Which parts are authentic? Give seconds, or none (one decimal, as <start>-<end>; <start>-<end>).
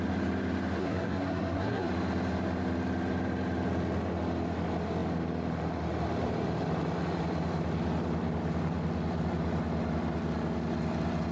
0.0-0.8; 1.9-11.3